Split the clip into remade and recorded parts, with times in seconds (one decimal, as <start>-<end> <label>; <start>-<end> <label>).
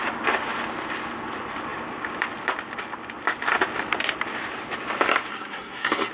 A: 0.0-5.3 recorded; 5.3-6.1 remade